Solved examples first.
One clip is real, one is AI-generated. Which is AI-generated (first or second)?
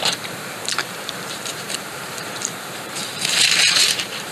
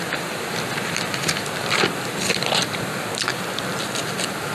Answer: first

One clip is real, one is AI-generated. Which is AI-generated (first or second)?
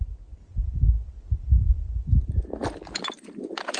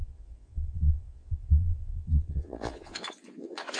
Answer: second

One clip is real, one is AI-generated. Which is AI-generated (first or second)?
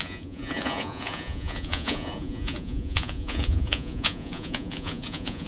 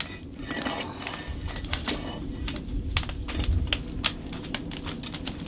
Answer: first